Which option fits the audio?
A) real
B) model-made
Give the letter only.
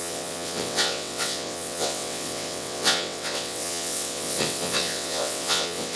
B